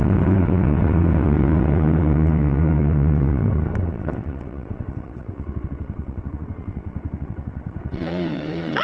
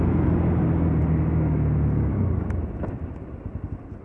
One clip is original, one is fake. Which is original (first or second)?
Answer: second